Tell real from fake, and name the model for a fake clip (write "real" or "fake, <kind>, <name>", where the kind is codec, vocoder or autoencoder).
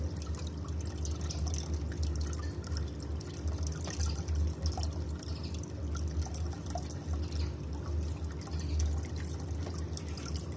real